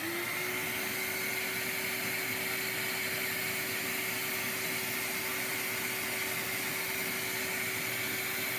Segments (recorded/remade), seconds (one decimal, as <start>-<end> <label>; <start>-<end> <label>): 0.0-8.6 recorded

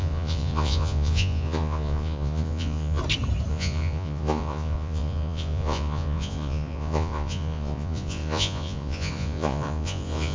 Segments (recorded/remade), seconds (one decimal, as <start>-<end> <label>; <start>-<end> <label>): 0.0-3.0 remade; 3.0-3.5 recorded; 3.5-10.3 remade

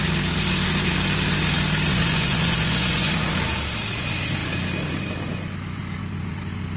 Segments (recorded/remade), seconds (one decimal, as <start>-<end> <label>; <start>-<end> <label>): 0.0-1.9 recorded; 1.9-3.1 remade; 3.1-6.8 recorded

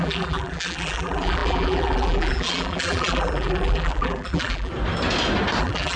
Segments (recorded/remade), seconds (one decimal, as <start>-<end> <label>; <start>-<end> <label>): 0.0-4.7 remade; 4.7-5.6 recorded; 5.6-6.0 remade